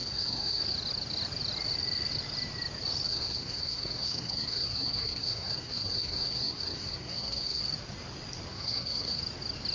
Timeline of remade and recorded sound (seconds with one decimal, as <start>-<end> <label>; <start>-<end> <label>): 0.0-0.6 remade; 0.6-3.1 recorded; 3.1-7.6 remade; 7.6-8.5 recorded; 8.5-9.2 remade; 9.2-9.7 recorded